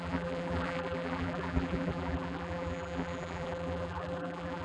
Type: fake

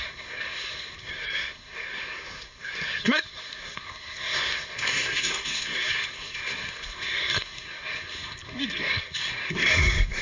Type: fake